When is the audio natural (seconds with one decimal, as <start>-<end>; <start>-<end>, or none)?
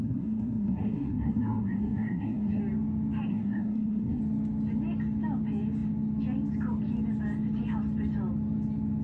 2.6-3.3; 4.2-9.0